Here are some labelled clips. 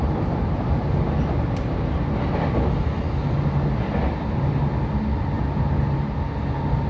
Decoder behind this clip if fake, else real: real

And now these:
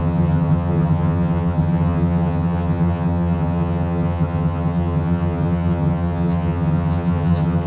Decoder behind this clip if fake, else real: fake, vocoder, HiFi-GAN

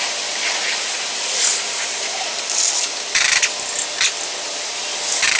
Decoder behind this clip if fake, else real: real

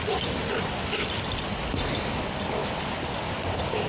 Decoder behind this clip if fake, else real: real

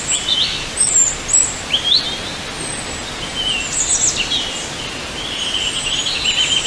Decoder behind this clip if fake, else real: real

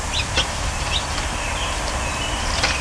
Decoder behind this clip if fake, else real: real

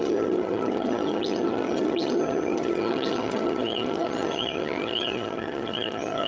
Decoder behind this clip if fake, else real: fake, vocoder, HiFi-GAN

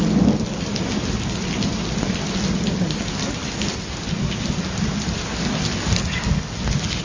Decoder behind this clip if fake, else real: real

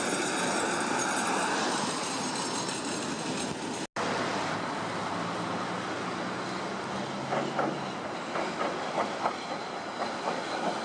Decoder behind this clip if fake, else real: real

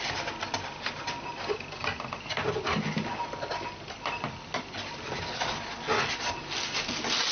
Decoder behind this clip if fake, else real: real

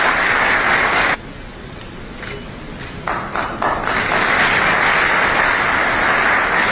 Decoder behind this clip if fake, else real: real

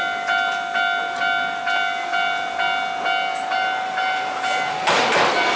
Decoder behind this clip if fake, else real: real